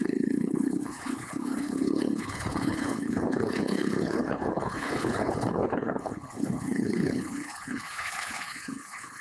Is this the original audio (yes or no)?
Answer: no